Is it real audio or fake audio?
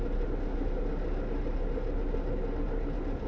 real